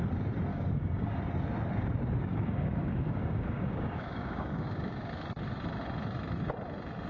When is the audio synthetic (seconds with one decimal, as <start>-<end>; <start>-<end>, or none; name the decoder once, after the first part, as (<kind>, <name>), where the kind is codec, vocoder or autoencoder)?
0.5-1.2 (codec, DAC); 2.2-5.1